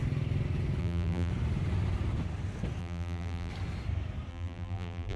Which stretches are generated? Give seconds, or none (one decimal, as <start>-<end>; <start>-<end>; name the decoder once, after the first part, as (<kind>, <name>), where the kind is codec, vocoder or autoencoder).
0.8-1.3 (vocoder, BigVGAN v2); 2.8-3.5; 4.3-5.2